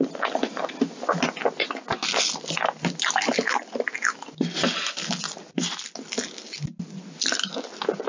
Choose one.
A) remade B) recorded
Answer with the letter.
B